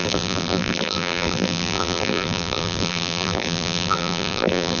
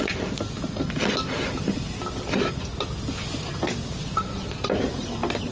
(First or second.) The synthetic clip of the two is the first